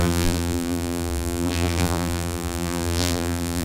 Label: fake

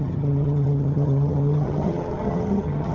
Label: fake